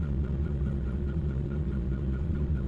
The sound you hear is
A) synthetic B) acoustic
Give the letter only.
A